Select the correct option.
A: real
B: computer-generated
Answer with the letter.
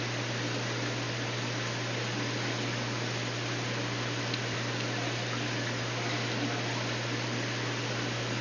A